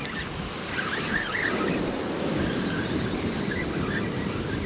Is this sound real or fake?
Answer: real